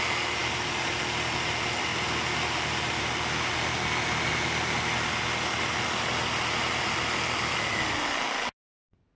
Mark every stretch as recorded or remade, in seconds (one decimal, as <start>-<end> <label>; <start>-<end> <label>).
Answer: 0.0-9.2 recorded